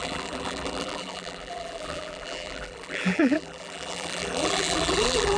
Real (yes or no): no